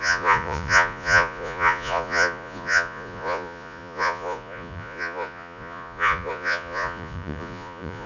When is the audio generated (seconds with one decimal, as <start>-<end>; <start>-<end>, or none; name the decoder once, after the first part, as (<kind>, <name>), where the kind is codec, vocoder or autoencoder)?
0.0-8.1 (vocoder, Vocos)